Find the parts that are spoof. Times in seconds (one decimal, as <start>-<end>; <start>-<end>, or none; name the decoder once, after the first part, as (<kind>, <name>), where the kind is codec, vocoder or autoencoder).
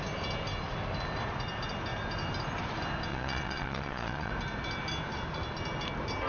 3.1-4.3 (vocoder, Vocos)